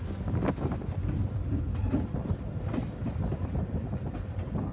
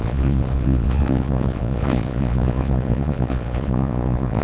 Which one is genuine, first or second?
first